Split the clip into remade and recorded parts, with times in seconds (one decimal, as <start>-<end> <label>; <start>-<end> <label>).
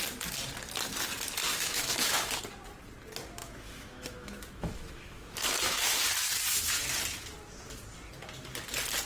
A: 0.0-1.5 recorded; 1.5-2.4 remade; 2.4-3.4 recorded; 3.4-6.0 remade; 6.0-9.1 recorded